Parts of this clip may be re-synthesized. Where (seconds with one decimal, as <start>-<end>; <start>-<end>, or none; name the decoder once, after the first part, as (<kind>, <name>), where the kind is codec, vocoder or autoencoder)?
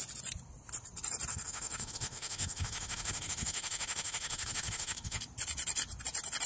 1.3-5.2 (autoencoder, DAC-VAE)